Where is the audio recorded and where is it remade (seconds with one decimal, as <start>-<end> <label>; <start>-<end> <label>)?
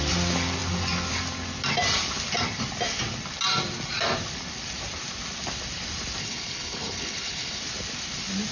0.0-6.2 recorded; 6.2-7.6 remade; 7.6-8.5 recorded